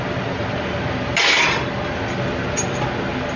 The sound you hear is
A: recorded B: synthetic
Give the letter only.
A